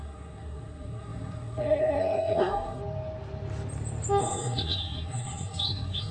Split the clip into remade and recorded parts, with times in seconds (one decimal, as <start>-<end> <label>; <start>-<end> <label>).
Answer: 0.0-2.8 remade; 2.8-4.2 recorded; 4.2-6.1 remade